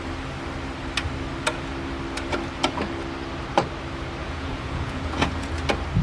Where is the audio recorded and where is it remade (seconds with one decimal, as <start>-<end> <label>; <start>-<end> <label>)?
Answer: 0.0-4.2 recorded; 4.2-5.5 remade; 5.5-6.0 recorded